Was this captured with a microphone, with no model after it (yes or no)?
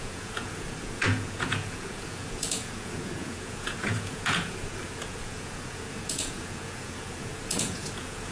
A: no